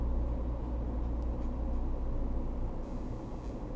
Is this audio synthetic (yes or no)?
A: no